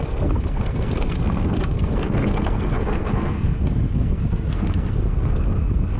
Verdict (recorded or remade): remade